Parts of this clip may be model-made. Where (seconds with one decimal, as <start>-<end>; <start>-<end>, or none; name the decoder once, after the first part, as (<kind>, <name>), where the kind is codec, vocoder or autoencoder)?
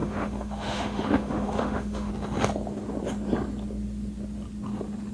0.0-2.1 (autoencoder, DAC-VAE)